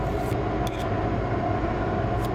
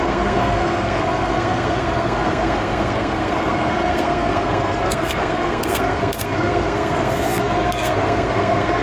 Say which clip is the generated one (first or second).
second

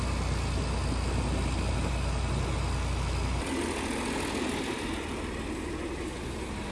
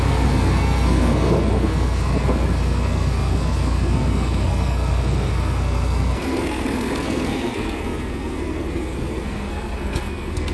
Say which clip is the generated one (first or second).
second